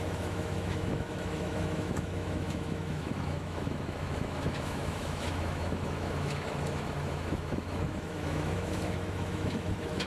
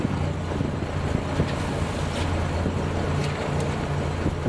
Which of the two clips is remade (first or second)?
first